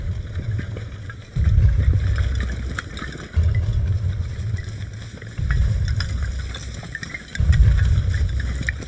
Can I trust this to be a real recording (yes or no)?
yes